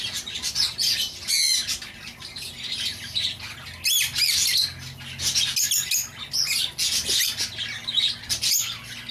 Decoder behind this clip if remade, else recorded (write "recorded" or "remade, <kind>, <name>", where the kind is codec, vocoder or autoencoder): recorded